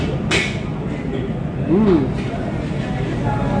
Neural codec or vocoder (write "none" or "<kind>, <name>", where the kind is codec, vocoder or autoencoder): none